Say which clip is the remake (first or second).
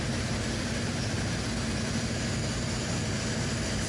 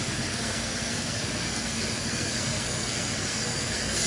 second